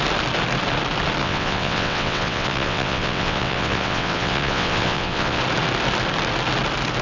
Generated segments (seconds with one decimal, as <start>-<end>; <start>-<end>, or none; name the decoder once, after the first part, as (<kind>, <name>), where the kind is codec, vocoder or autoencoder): 1.2-5.4 (vocoder, WaveNeXt)